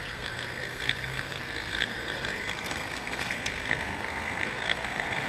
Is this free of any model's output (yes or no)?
no